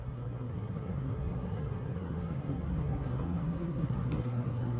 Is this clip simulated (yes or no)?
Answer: yes